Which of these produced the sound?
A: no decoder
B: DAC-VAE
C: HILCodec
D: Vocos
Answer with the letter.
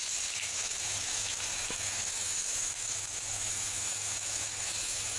B